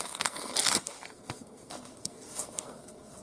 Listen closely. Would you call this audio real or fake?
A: fake